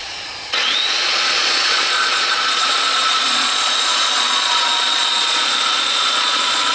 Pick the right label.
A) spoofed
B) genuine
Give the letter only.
A